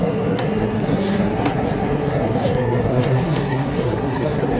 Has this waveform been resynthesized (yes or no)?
yes